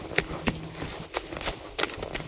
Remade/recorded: recorded